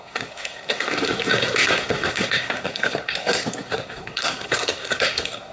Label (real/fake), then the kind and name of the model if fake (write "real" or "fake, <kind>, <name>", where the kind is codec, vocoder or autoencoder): fake, codec, SNAC